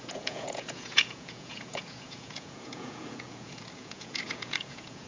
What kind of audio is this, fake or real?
fake